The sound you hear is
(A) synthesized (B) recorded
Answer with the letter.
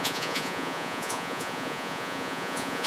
A